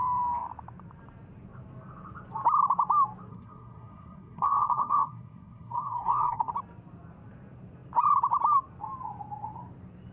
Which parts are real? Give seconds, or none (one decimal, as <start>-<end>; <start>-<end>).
0.0-3.3; 6.5-10.1